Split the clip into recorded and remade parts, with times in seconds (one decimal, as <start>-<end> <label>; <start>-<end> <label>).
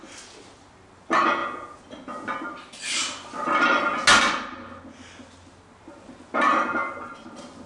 0.0-7.7 recorded